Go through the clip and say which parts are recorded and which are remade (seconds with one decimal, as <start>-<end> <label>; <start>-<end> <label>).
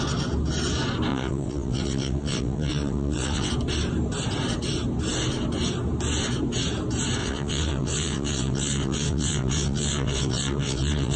0.0-1.1 recorded; 1.1-3.5 remade; 3.5-7.2 recorded; 7.2-11.2 remade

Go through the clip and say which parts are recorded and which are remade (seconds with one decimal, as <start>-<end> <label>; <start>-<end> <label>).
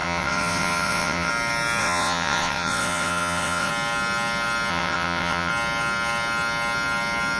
0.0-1.3 remade; 1.3-1.8 recorded; 1.8-3.7 remade; 3.7-4.7 recorded; 4.7-5.5 remade; 5.5-7.4 recorded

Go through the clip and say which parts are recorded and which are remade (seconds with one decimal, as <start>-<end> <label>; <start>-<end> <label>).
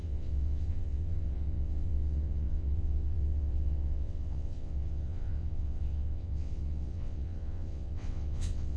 0.0-8.8 remade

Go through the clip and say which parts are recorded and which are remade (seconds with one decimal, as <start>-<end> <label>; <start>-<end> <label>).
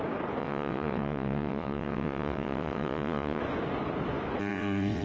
0.0-0.4 recorded; 0.4-3.4 remade; 3.4-4.5 recorded; 4.5-5.0 remade